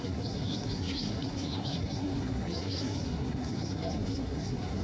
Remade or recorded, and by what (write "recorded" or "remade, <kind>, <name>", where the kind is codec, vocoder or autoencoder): remade, codec, SNAC